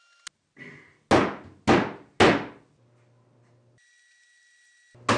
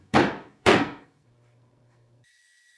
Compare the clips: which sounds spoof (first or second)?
second